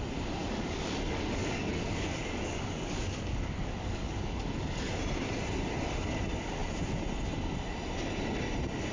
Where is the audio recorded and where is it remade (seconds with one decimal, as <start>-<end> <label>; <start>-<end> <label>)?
0.0-0.4 recorded; 0.4-4.8 remade; 4.8-8.9 recorded